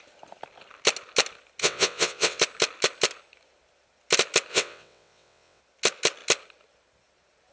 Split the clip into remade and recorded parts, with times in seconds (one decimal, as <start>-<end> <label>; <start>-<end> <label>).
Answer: 0.0-1.6 recorded; 1.6-2.4 remade; 2.4-4.5 recorded; 4.5-5.6 remade; 5.6-7.5 recorded